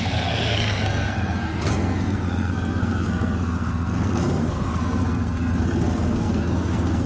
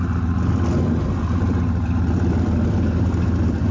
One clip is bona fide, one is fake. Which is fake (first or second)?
first